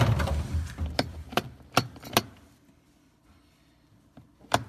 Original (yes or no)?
yes